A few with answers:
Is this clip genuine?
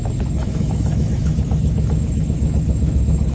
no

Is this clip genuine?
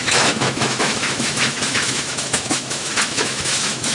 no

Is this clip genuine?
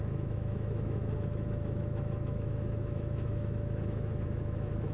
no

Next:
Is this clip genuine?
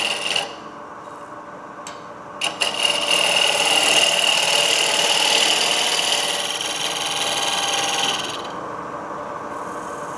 yes